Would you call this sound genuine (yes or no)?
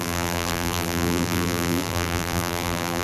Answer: no